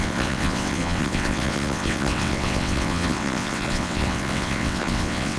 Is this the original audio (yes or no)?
no